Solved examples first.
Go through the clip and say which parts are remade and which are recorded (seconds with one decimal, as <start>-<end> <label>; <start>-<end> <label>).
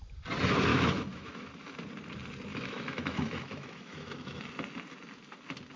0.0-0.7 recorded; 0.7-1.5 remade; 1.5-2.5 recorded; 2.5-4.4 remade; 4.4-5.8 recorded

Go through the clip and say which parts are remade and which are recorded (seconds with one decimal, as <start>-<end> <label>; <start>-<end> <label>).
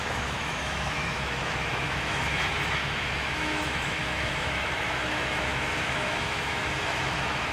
0.0-7.5 remade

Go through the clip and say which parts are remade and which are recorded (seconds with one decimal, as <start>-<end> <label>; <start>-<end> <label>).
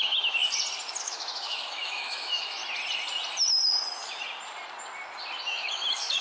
0.0-0.4 remade; 0.4-1.0 recorded; 1.0-2.6 remade; 2.6-5.4 recorded; 5.4-6.2 remade